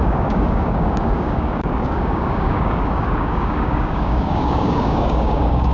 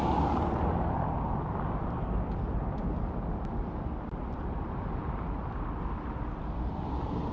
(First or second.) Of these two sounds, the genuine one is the second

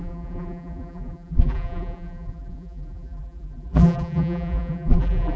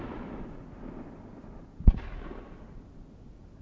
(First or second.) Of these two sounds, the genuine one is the second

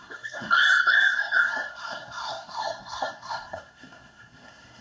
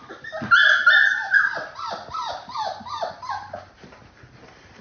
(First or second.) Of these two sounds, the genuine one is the second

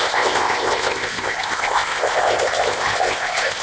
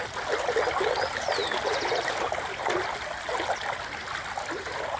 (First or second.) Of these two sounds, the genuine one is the second